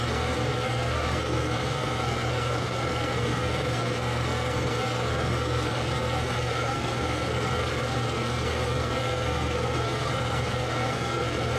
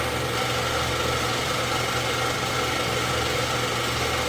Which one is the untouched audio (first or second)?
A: second